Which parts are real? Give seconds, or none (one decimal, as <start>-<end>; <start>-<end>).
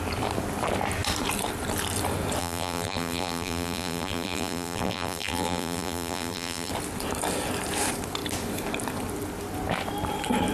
0.0-2.4; 6.7-10.5